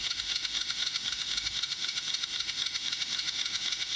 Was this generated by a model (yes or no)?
yes